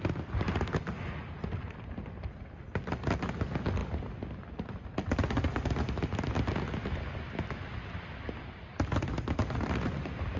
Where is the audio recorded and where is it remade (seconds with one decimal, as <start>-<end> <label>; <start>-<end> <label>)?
0.0-10.4 recorded